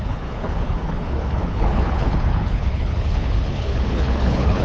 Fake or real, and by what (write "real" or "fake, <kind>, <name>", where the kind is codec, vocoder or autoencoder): fake, codec, HILCodec